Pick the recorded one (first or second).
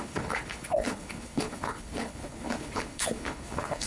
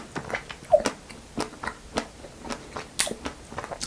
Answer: second